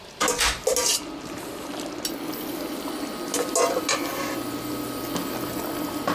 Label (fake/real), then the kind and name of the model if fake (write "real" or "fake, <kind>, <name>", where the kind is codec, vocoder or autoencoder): real